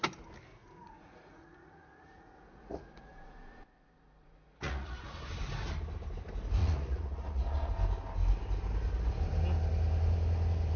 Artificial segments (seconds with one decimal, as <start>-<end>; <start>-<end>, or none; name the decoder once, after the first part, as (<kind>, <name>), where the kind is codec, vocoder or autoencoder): 0.5-5.1 (vocoder, Vocos); 6.6-7.7